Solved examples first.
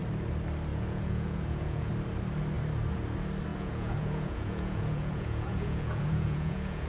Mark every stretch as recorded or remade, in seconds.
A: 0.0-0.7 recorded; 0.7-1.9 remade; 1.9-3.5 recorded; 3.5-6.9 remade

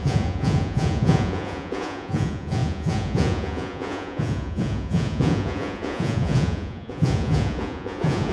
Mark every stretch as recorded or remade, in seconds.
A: 0.0-8.3 remade

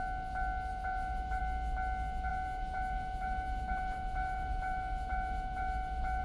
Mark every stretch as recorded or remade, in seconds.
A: 0.0-0.7 recorded; 0.7-1.4 remade; 1.4-2.3 recorded; 2.3-6.2 remade